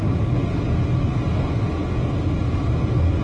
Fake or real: real